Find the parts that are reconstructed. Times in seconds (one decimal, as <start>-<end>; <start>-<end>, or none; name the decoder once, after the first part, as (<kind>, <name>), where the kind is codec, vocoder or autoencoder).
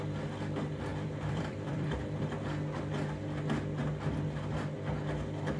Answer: 0.9-2.0 (vocoder, BigVGAN v2)